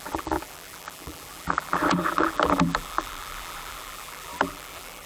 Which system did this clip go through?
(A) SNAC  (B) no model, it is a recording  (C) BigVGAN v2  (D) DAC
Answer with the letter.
C